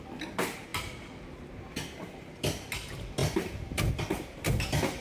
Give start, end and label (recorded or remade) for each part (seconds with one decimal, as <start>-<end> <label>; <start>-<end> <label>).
0.0-5.0 recorded